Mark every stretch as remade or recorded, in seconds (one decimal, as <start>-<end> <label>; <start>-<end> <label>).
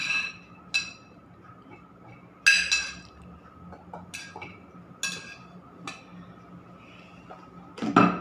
0.0-8.2 recorded